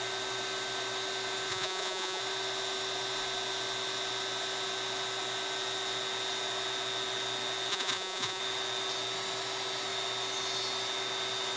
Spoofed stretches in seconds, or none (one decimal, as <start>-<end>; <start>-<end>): 1.5-2.2; 7.7-8.4